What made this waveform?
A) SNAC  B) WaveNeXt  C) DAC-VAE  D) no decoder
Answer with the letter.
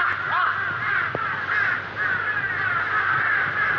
D